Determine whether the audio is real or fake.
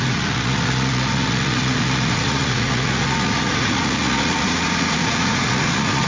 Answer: fake